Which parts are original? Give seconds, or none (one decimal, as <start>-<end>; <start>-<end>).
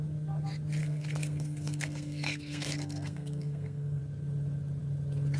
0.0-0.8; 4.0-5.4